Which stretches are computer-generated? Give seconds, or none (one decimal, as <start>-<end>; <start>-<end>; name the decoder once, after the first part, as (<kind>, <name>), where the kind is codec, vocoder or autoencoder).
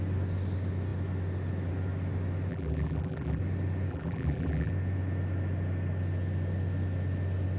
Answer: 2.5-3.4 (vocoder, BigVGAN v2); 3.9-4.7